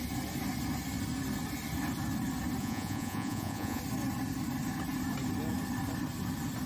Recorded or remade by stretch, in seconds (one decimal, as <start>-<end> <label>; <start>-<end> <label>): 0.0-2.6 recorded; 2.6-3.8 remade; 3.8-6.7 recorded